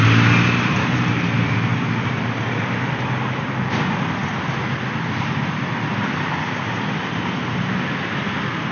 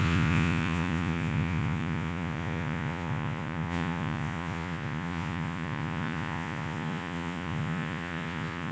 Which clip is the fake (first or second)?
second